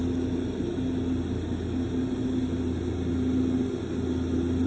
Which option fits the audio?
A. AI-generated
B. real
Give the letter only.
B